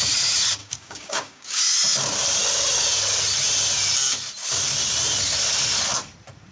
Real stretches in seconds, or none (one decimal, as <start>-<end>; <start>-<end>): 0.0-0.6; 1.6-6.5

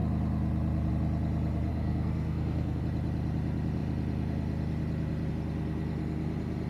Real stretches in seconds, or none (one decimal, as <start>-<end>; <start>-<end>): 0.0-1.7; 2.8-6.7